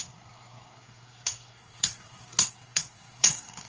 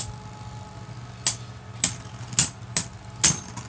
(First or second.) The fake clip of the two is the first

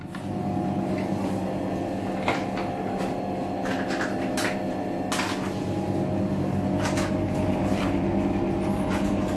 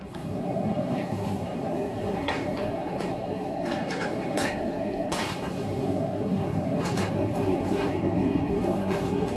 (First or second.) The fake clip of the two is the second